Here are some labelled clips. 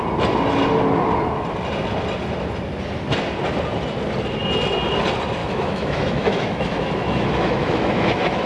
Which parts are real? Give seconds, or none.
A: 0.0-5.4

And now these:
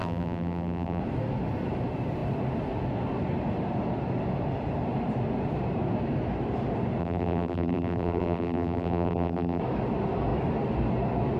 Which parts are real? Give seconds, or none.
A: 1.0-7.0; 9.6-11.4